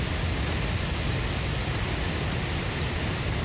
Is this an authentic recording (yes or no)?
yes